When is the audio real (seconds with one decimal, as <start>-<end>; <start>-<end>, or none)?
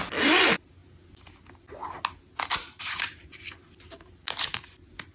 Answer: 0.0-5.1